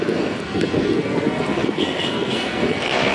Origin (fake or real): fake